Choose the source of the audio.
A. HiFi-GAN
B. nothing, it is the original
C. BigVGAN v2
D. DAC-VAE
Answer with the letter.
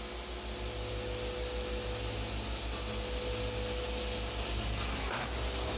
B